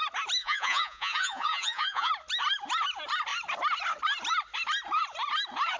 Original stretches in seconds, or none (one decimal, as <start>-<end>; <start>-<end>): 0.0-0.4; 2.1-5.8